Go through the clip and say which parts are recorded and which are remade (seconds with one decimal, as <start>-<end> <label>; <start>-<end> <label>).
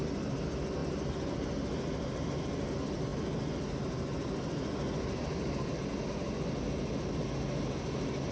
0.0-8.3 recorded